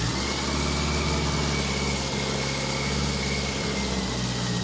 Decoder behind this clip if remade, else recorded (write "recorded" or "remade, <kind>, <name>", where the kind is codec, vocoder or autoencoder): recorded